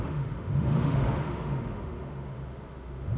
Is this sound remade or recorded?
remade